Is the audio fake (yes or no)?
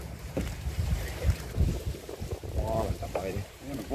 yes